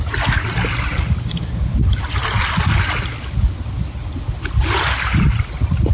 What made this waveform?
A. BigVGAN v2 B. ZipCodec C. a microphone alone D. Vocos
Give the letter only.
C